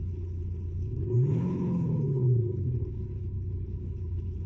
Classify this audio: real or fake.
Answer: fake